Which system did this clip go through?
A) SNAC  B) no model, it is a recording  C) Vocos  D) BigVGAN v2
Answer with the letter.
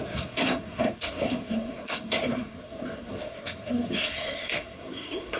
A